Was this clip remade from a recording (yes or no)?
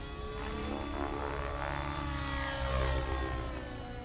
no